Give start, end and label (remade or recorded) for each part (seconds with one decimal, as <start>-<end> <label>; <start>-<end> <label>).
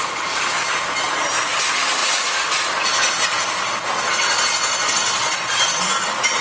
0.0-6.4 recorded